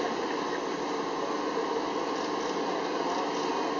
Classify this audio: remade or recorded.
recorded